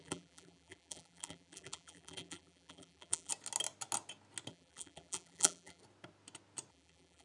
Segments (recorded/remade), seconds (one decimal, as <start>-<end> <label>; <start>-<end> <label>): 0.0-3.3 remade; 3.3-4.5 recorded; 4.5-5.8 remade; 5.8-6.7 recorded; 6.7-7.2 remade

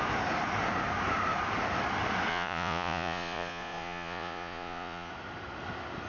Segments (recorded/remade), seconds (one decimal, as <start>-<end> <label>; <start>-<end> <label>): 0.0-2.3 recorded; 2.3-5.1 remade; 5.1-6.1 recorded

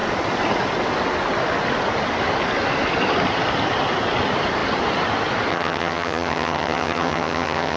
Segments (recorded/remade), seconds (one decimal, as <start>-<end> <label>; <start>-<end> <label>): 0.0-5.5 recorded; 5.5-7.8 remade